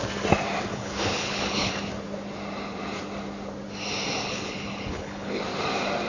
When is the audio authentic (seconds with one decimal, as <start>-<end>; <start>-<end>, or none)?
0.0-0.7; 1.7-4.2; 5.4-6.1